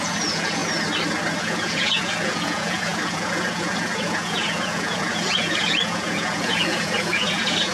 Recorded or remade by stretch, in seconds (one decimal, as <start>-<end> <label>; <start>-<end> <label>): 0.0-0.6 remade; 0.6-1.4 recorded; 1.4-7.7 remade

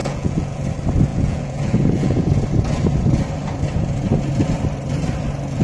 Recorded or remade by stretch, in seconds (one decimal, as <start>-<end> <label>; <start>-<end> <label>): 0.0-0.7 remade; 0.7-1.1 recorded; 1.1-2.3 remade; 2.3-5.6 recorded

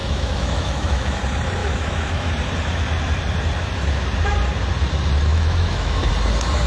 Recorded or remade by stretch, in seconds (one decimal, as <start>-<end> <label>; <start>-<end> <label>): 0.0-1.2 remade; 1.2-1.6 recorded; 1.6-2.3 remade; 2.3-5.3 recorded; 5.3-6.1 remade; 6.1-6.7 recorded

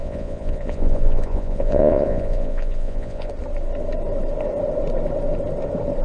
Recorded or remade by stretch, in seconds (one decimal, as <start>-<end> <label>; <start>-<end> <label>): 0.0-3.3 remade; 3.3-6.0 recorded

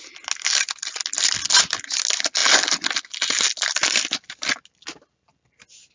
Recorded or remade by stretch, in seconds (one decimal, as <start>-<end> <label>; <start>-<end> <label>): 0.0-5.9 recorded

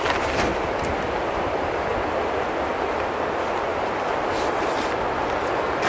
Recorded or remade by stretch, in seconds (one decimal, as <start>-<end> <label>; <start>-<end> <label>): 0.0-5.9 recorded